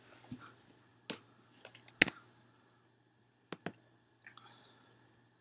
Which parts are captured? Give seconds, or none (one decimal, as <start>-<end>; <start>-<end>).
0.0-5.4